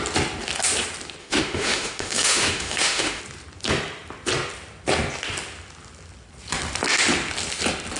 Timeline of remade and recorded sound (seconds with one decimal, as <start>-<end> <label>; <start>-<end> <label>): 0.0-1.2 recorded; 1.2-3.2 remade; 3.2-8.0 recorded